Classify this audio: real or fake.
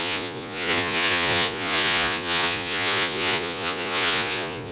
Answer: fake